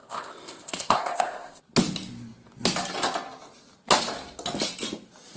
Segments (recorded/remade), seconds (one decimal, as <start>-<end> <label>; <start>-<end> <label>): 0.0-1.6 remade; 1.6-5.4 recorded

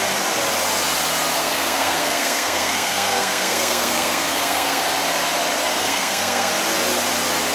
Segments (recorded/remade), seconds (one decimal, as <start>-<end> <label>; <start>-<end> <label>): 0.0-1.4 recorded; 1.4-4.8 remade; 4.8-5.8 recorded; 5.8-6.5 remade; 6.5-7.5 recorded

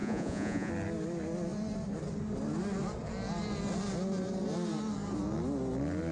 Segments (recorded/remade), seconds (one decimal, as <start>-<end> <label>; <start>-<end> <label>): 0.0-0.7 remade; 0.7-6.1 recorded

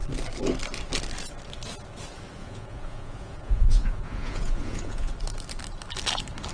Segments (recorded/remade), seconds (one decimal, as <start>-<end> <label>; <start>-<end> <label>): 0.0-2.4 recorded; 2.4-5.1 remade; 5.1-6.5 recorded

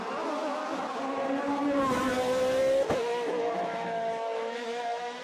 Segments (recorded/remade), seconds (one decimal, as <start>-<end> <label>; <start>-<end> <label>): 0.0-3.0 recorded; 3.0-5.2 remade

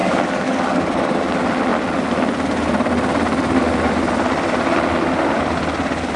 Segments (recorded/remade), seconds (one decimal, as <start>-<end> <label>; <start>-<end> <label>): 0.0-1.2 remade; 1.2-6.2 recorded

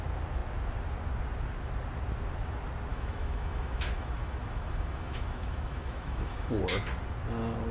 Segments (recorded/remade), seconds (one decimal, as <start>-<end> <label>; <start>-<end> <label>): 0.0-2.9 recorded; 2.9-6.6 remade; 6.6-7.7 recorded